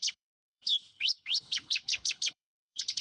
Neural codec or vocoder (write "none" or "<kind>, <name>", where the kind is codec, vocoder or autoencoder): codec, HILCodec